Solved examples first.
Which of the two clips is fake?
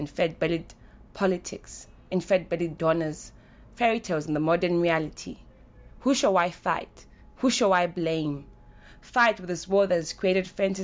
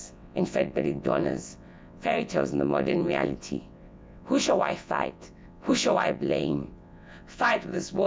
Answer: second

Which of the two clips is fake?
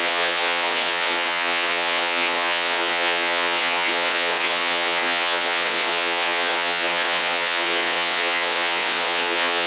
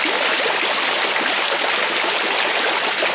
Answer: first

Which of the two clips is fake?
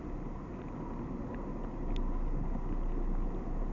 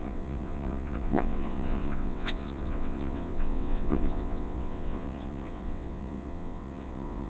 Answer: second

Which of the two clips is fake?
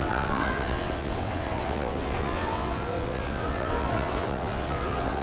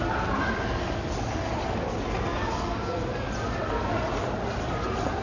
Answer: first